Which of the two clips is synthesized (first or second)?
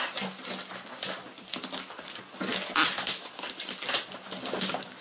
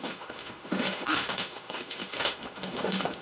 second